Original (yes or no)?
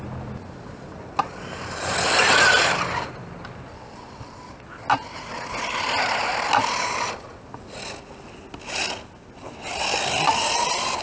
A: yes